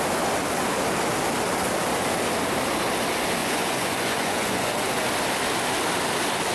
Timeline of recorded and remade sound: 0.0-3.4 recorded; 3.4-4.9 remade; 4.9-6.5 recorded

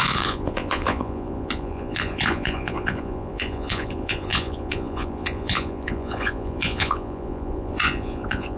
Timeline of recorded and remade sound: 0.0-8.6 remade

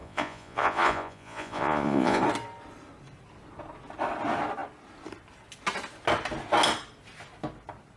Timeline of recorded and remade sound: 0.0-2.2 remade; 2.2-8.0 recorded

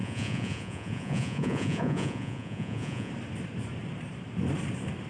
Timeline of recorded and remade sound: 0.0-3.1 remade; 3.1-5.1 recorded

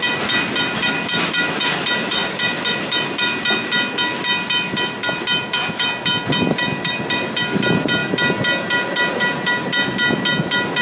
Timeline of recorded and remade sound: 0.0-10.8 recorded

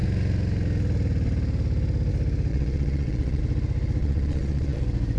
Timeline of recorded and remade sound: 0.0-2.5 recorded; 2.5-3.4 remade; 3.4-4.0 recorded; 4.0-4.8 remade; 4.8-5.2 recorded